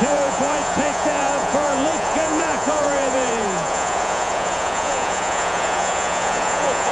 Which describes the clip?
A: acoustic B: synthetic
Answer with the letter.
B